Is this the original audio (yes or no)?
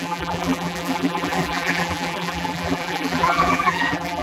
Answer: no